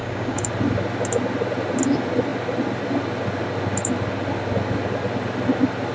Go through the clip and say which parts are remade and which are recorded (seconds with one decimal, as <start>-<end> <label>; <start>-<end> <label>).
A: 0.0-0.5 remade; 0.5-5.9 recorded